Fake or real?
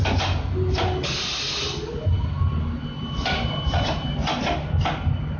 real